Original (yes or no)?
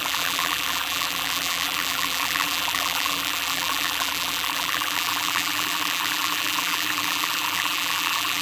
no